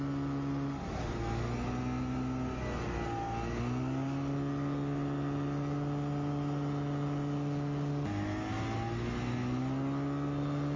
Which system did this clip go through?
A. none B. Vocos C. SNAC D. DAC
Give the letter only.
A